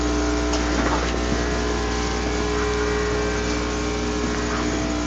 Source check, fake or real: real